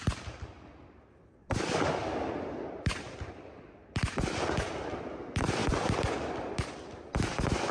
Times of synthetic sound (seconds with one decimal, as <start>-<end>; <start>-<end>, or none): none